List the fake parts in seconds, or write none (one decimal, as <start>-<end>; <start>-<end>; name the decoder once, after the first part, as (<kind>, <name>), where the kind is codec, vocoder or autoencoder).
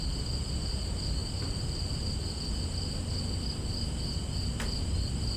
none